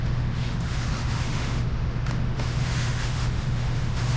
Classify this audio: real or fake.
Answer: fake